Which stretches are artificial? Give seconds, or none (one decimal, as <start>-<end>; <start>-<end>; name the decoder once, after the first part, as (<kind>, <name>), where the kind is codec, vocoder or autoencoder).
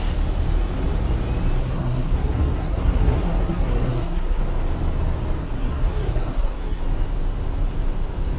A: 1.6-4.4 (codec, SNAC); 5.4-6.8